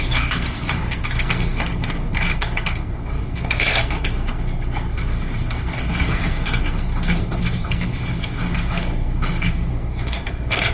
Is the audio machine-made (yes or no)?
yes